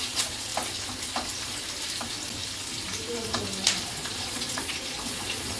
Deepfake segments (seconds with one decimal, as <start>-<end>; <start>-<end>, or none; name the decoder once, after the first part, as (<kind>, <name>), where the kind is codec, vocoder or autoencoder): 0.0-0.5 (vocoder, Vocos); 3.9-5.6